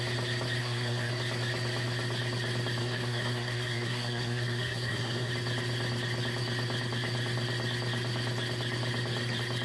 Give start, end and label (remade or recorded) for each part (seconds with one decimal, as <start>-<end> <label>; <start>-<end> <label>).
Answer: 0.0-0.6 recorded; 0.6-1.1 remade; 1.1-2.8 recorded; 2.8-5.3 remade; 5.3-9.6 recorded